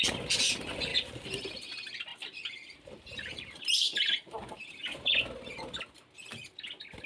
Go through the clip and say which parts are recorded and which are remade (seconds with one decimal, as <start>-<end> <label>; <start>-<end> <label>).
0.0-0.9 recorded; 0.9-1.7 remade; 1.7-2.1 recorded; 2.1-4.8 remade; 4.8-7.1 recorded